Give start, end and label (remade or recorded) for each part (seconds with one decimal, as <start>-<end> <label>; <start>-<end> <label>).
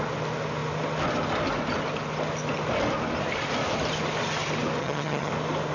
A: 0.0-4.8 recorded; 4.8-5.3 remade; 5.3-5.7 recorded